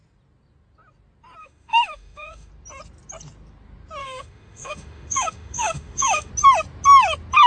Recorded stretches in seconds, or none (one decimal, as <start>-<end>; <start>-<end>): 0.0-1.4; 2.5-4.0; 6.3-7.5